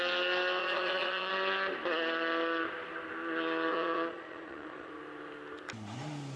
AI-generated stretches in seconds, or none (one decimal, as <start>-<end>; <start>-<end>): 0.6-1.3; 3.7-4.9